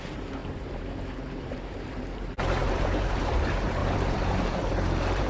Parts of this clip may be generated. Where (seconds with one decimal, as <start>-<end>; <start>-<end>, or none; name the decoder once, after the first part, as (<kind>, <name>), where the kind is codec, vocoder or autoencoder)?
0.0-5.3 (vocoder, BigVGAN v2)